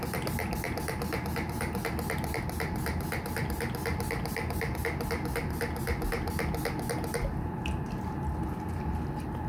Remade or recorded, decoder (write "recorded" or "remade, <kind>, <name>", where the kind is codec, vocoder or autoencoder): recorded